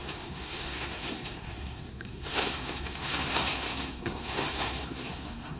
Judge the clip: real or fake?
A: fake